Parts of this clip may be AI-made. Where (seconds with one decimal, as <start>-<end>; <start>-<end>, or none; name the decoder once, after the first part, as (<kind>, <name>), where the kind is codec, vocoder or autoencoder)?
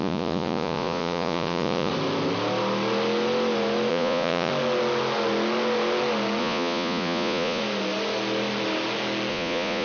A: 0.0-1.9 (vocoder, Vocos); 3.9-4.5; 6.4-7.6; 9.3-9.8